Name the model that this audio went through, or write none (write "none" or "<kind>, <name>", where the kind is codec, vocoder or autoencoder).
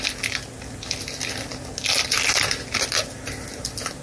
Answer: none